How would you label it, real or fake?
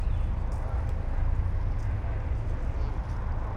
real